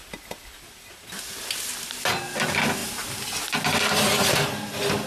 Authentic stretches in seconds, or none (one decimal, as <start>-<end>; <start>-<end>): 0.0-5.1